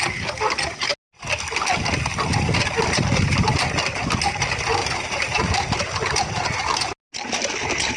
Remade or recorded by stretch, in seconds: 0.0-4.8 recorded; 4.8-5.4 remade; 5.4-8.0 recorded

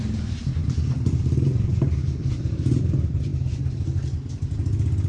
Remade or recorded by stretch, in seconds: 0.0-0.6 recorded; 0.6-2.8 remade; 2.8-5.1 recorded

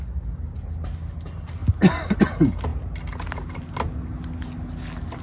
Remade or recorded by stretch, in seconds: 0.0-5.2 recorded

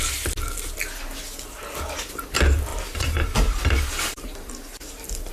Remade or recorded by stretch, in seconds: 0.0-2.7 recorded; 2.7-5.3 remade

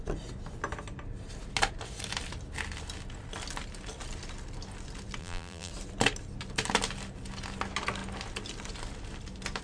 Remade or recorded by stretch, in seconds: 0.0-5.2 recorded; 5.2-5.7 remade; 5.7-9.6 recorded

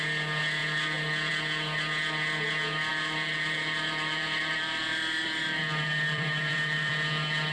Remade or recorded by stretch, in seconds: 0.0-2.9 recorded; 2.9-6.9 remade; 6.9-7.5 recorded